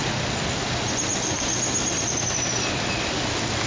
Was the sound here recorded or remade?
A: recorded